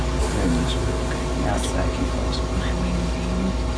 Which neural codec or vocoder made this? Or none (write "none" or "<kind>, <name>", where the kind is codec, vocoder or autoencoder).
none